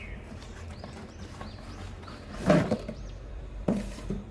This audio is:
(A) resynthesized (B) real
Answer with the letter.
A